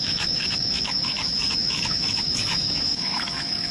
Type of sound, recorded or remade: remade